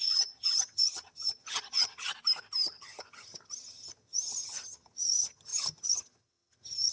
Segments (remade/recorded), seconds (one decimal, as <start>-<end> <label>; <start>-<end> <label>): 0.0-2.1 remade; 2.1-2.6 recorded; 2.6-6.9 remade